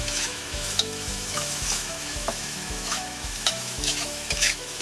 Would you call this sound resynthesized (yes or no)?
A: yes